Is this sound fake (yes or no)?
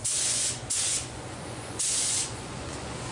yes